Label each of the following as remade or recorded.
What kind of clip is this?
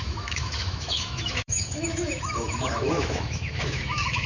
remade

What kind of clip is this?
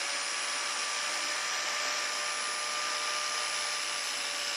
recorded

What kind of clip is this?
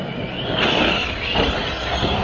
recorded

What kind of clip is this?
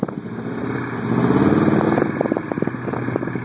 recorded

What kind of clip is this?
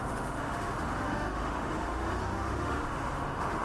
remade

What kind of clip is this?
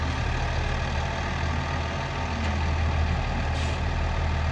recorded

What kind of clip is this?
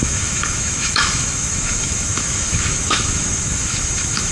remade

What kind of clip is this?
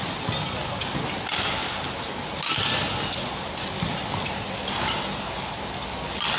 recorded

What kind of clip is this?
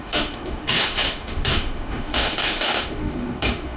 remade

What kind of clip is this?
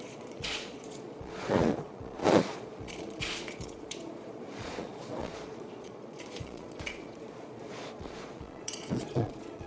remade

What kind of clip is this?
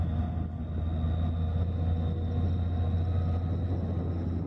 recorded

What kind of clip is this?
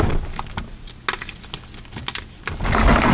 recorded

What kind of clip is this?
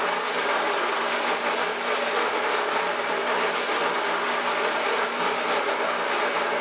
recorded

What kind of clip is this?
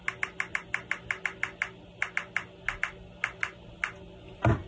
recorded